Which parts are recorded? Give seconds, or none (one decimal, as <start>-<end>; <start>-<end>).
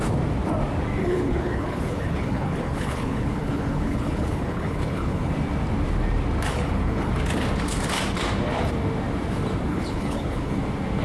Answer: 0.0-1.0; 5.3-6.5; 7.1-9.7; 10.6-11.0